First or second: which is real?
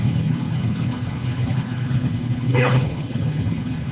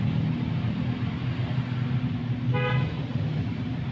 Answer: second